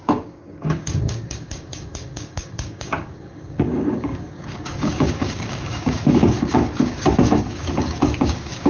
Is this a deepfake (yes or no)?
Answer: yes